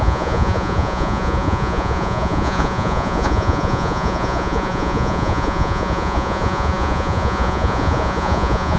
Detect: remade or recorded remade